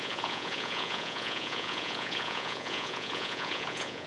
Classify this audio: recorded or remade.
remade